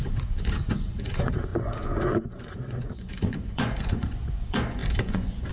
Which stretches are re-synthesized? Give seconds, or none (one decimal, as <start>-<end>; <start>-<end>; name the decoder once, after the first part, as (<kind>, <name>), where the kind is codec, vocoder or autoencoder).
0.0-5.5 (vocoder, Vocos)